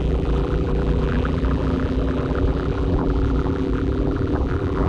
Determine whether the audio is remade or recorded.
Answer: remade